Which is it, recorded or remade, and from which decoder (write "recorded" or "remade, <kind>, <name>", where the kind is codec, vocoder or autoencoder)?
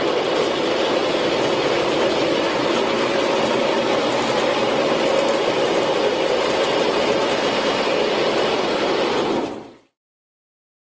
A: recorded